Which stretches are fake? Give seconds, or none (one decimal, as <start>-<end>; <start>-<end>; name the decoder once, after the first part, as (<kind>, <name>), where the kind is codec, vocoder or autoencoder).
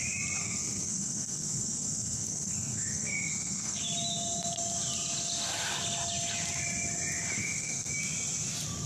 0.4-3.8 (codec, SNAC); 7.4-7.9